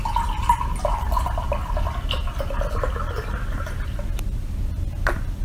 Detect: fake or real real